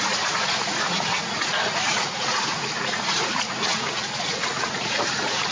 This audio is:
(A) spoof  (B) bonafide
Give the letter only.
A